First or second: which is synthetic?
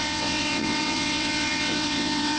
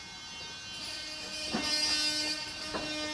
first